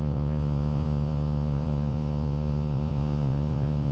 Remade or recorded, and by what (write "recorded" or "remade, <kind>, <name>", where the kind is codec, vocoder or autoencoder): remade, vocoder, Vocos